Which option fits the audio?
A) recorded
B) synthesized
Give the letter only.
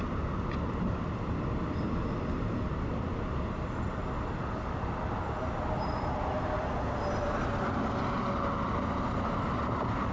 A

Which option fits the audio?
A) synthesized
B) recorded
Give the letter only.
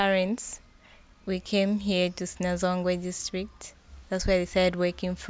B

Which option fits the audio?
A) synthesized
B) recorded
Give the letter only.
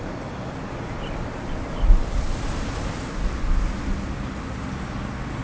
B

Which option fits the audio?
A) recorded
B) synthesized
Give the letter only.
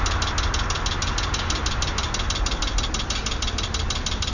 A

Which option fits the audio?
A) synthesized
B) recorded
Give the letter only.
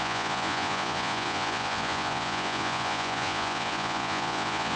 A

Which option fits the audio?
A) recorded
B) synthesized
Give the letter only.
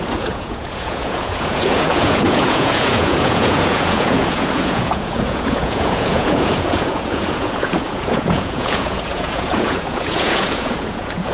B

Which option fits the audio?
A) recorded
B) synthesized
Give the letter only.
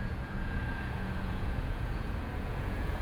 B